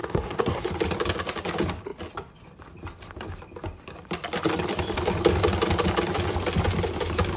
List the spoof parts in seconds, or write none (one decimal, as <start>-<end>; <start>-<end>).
0.0-0.7